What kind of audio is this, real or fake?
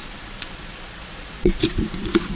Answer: fake